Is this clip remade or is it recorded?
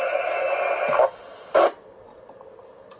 recorded